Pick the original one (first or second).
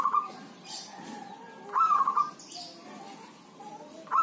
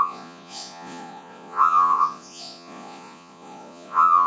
first